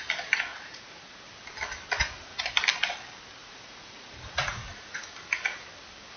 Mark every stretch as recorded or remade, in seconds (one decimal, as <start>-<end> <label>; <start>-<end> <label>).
0.0-0.5 recorded; 0.5-1.3 remade; 1.3-2.0 recorded; 2.0-2.5 remade; 2.5-3.4 recorded; 3.4-5.0 remade; 5.0-6.2 recorded